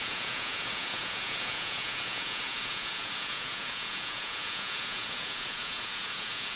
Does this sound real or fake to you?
fake